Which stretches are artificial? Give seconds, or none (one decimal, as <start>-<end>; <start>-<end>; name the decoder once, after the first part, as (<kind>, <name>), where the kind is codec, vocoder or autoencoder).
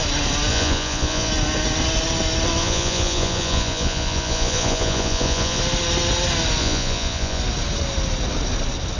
0.5-1.3 (vocoder, Vocos); 2.6-5.6; 6.6-7.4